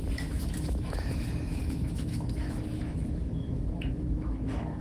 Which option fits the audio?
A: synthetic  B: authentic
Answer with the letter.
A